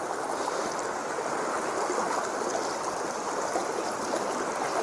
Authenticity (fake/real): real